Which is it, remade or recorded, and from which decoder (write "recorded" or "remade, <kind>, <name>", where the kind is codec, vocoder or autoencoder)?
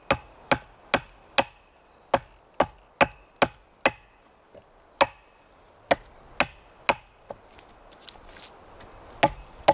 recorded